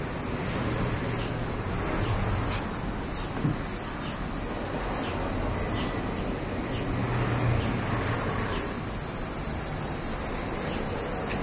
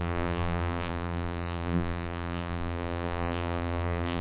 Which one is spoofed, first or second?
second